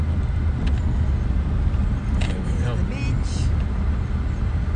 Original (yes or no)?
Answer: yes